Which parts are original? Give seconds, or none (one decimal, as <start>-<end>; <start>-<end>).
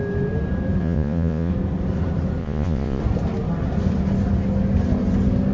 0.0-0.8; 1.5-2.4; 3.0-5.5